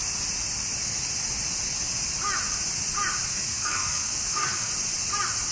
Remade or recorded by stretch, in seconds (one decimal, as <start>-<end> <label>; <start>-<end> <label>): 0.0-3.3 recorded; 3.3-4.7 remade; 4.7-5.5 recorded